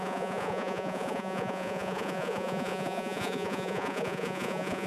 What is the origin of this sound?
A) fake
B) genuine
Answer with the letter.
A